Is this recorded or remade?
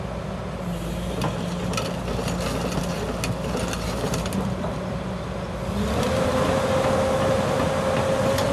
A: recorded